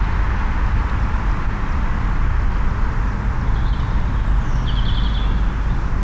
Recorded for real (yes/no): yes